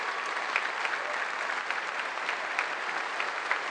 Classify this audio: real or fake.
real